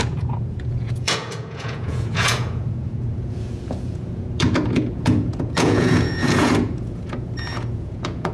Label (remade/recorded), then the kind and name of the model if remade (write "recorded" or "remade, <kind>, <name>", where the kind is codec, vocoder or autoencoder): remade, vocoder, Vocos